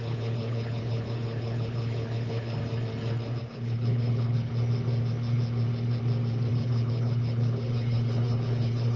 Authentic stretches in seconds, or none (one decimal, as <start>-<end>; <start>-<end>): 2.6-3.4; 4.5-6.5